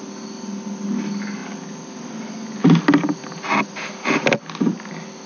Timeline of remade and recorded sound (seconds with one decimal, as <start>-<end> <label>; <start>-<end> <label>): 0.0-5.3 recorded